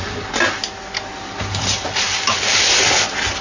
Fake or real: real